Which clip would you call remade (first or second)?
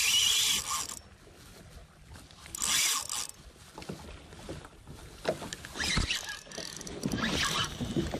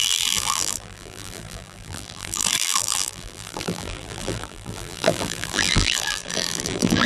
second